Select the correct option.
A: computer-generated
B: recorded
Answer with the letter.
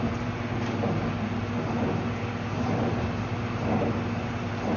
B